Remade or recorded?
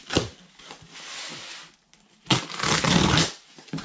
recorded